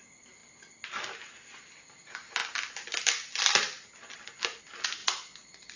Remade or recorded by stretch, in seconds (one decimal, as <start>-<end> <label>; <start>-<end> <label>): 0.0-5.8 recorded